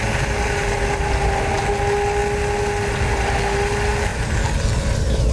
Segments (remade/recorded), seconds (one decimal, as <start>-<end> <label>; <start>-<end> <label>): 0.0-5.3 recorded